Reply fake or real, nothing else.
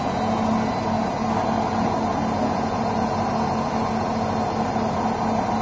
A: real